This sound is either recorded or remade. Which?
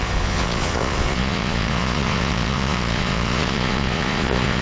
remade